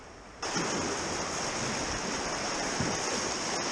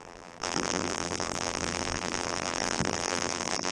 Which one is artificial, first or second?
second